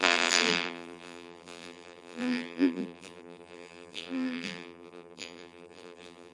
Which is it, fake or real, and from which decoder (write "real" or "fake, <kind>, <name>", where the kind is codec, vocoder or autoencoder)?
fake, vocoder, BigVGAN v2